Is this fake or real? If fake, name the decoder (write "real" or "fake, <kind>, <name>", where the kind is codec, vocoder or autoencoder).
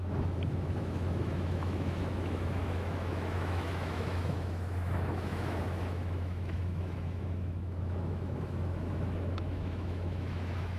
fake, autoencoder, DAC-VAE